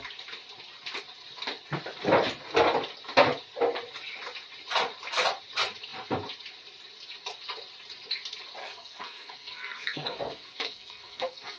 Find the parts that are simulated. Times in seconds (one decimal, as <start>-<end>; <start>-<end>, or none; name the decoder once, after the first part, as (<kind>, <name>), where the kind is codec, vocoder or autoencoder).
8.6-11.6 (codec, SNAC)